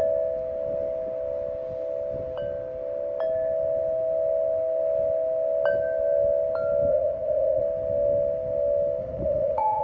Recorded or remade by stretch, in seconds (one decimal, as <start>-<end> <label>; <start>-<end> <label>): 0.0-6.9 recorded; 6.9-7.6 remade; 7.6-9.0 recorded; 9.0-9.8 remade